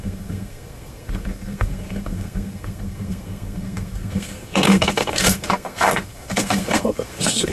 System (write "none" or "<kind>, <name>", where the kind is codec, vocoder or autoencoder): codec, SNAC